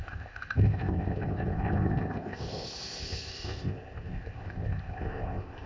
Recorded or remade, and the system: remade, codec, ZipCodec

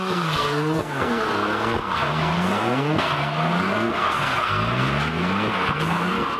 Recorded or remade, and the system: remade, codec, SNAC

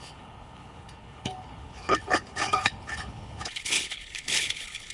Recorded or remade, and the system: remade, codec, HILCodec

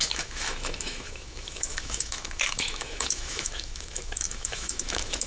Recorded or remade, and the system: remade, autoencoder, DAC-VAE